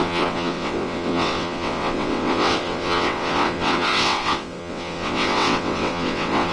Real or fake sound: fake